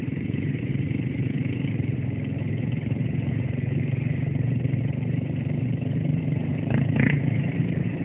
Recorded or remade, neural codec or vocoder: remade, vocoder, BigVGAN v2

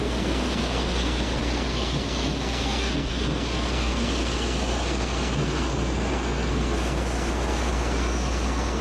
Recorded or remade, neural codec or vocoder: remade, codec, SNAC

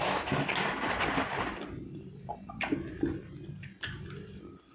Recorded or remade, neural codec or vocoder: recorded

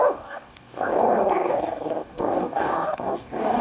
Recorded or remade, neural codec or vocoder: remade, codec, DAC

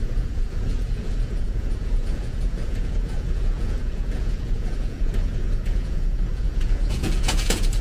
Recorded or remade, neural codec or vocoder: remade, vocoder, Vocos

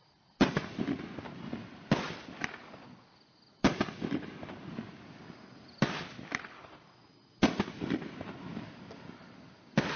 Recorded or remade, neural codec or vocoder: recorded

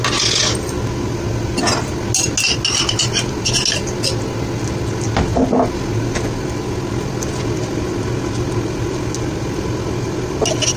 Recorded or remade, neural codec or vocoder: recorded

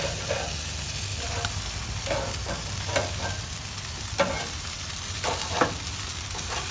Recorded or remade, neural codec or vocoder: recorded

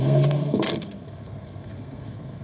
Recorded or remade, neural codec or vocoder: remade, codec, SNAC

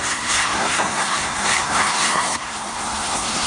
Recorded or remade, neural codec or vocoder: remade, codec, SNAC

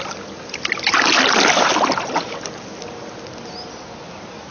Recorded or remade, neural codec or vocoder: recorded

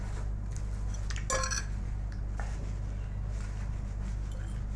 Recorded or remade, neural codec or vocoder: recorded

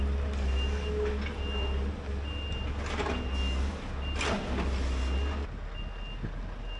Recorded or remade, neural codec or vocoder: recorded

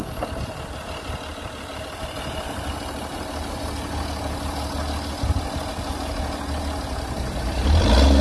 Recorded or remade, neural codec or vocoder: recorded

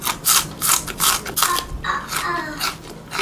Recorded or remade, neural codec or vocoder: recorded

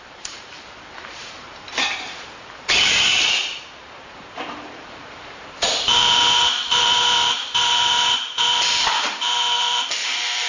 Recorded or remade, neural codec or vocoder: remade, vocoder, BigVGAN v2